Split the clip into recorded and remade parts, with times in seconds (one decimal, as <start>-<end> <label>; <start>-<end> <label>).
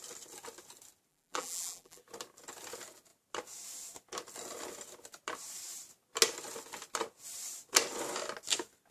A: 0.0-1.1 recorded; 1.1-2.0 remade; 2.0-8.9 recorded